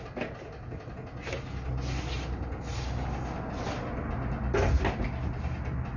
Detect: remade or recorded recorded